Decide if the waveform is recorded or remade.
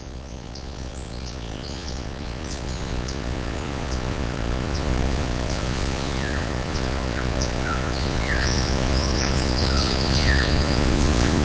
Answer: remade